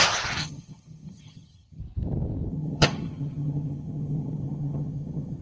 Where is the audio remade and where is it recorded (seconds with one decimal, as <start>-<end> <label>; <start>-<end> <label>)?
0.0-0.4 recorded; 0.4-1.8 remade; 1.8-2.5 recorded; 2.5-5.4 remade